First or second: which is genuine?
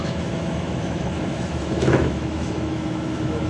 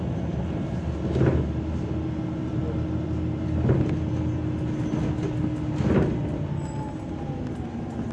second